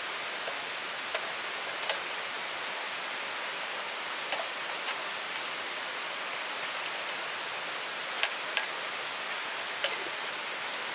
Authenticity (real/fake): real